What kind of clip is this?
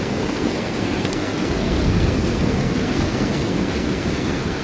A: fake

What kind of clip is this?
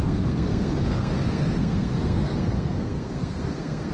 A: fake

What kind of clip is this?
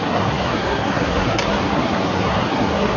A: fake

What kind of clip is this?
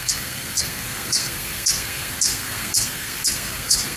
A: fake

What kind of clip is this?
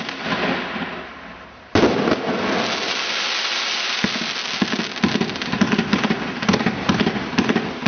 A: real